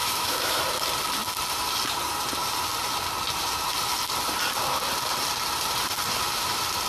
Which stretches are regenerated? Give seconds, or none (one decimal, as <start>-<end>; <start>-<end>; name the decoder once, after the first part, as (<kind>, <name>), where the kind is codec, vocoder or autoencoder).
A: 0.0-0.6 (autoencoder, DAC-VAE)